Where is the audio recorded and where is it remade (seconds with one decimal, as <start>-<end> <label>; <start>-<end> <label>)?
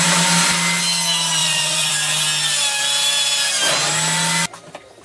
0.0-1.4 recorded; 1.4-1.9 remade; 1.9-5.0 recorded